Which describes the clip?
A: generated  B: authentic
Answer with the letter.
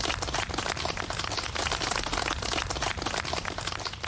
B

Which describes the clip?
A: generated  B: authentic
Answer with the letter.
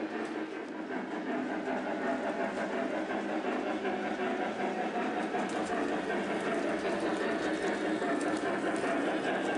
B